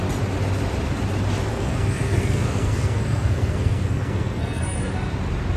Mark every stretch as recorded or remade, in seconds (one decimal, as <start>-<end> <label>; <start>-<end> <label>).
0.0-1.5 recorded; 1.5-4.9 remade; 4.9-5.6 recorded